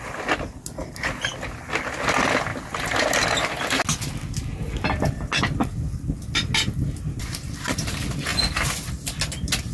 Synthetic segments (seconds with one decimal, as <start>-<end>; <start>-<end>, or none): none